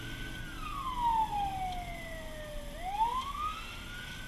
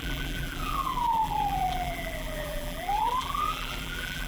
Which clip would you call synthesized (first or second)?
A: second